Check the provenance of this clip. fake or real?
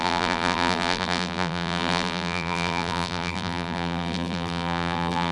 fake